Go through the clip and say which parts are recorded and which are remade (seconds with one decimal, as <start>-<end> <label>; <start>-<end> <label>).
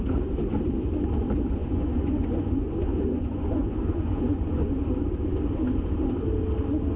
0.0-1.6 recorded; 1.6-4.7 remade; 4.7-7.0 recorded